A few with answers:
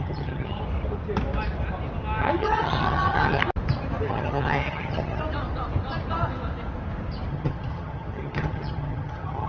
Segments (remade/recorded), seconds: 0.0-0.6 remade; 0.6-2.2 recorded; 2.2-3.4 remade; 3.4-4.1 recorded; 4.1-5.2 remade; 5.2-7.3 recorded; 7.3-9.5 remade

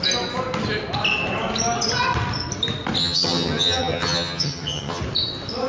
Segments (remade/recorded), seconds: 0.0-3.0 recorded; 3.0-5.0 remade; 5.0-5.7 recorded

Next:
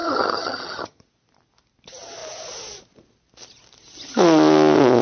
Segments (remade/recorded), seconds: 0.0-1.0 remade; 1.0-5.0 recorded